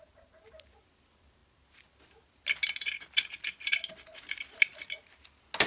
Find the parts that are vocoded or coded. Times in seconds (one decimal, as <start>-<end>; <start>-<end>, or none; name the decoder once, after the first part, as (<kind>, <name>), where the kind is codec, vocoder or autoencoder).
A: none